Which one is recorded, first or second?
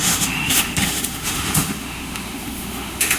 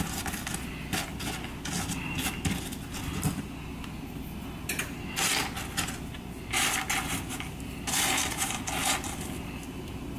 second